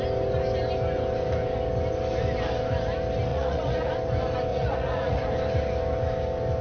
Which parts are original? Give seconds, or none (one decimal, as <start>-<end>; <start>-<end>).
0.0-3.3; 3.9-4.5; 5.2-6.6